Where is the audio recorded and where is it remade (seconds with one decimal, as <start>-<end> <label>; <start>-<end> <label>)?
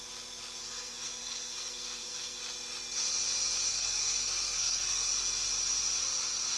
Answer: 0.0-0.6 recorded; 0.6-2.4 remade; 2.4-3.7 recorded; 3.7-5.1 remade; 5.1-6.6 recorded